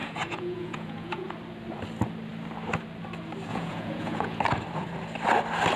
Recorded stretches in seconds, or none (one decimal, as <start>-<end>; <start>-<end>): 1.3-3.5; 4.4-5.8